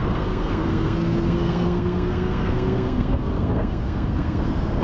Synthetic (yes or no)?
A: yes